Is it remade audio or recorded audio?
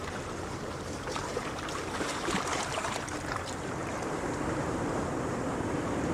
remade